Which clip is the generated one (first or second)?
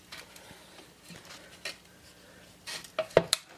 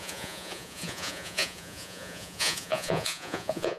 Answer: second